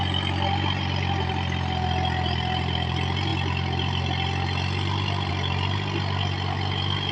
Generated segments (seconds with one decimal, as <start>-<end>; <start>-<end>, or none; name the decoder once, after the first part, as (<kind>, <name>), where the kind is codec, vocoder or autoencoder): none